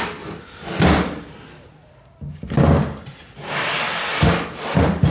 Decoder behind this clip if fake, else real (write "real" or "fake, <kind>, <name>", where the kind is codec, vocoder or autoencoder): real